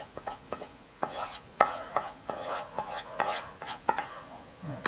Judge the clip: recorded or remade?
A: remade